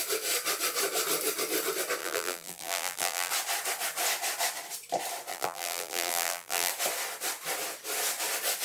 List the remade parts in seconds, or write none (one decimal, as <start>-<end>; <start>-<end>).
2.0-3.3; 5.3-6.7